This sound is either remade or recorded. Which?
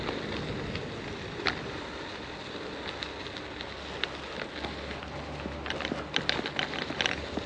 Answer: recorded